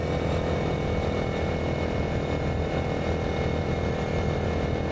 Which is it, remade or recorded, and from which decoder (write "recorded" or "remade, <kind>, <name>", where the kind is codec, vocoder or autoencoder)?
recorded